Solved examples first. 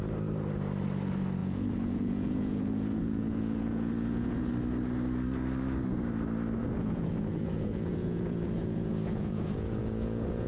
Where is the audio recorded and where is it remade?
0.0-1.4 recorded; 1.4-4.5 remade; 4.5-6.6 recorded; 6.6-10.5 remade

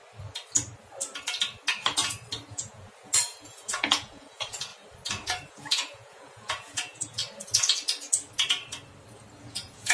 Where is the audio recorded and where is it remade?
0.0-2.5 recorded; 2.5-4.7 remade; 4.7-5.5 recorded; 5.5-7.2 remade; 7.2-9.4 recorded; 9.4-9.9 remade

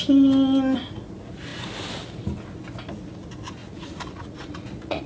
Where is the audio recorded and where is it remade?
0.0-3.6 recorded; 3.6-5.1 remade

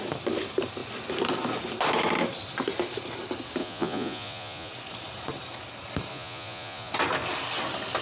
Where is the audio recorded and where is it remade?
0.0-3.6 recorded; 3.6-4.7 remade; 4.7-6.1 recorded; 6.1-6.9 remade; 6.9-8.0 recorded